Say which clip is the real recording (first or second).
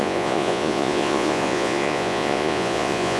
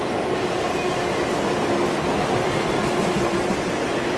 second